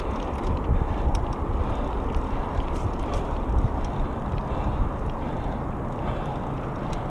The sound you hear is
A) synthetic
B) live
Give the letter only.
A